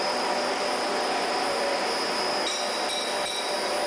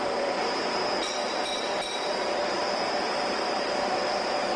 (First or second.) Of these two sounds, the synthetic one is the second